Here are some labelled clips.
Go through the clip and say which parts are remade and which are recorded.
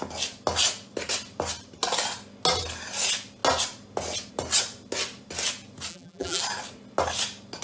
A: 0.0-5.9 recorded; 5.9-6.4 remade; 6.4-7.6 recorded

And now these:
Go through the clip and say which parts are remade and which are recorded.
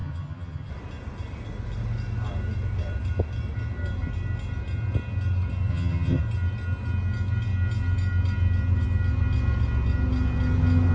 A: 0.0-0.7 remade; 0.7-5.7 recorded; 5.7-6.2 remade; 6.2-10.9 recorded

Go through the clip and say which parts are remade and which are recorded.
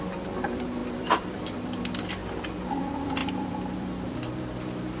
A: 0.0-2.2 remade; 2.2-2.7 recorded; 2.7-5.0 remade